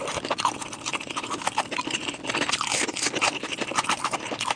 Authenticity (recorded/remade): recorded